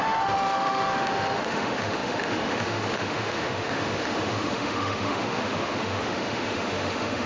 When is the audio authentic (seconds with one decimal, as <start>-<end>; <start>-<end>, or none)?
none

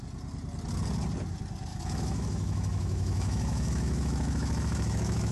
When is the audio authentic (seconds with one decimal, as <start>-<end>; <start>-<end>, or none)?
0.0-1.7

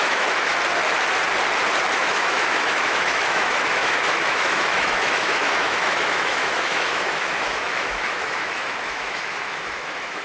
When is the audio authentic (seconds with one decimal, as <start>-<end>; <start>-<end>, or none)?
0.5-2.0